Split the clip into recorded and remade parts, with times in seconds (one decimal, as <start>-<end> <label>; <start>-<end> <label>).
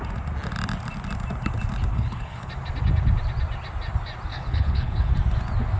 0.0-1.9 recorded; 1.9-2.5 remade; 2.5-4.3 recorded; 4.3-5.1 remade; 5.1-5.8 recorded